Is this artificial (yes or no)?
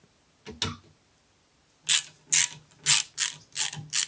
no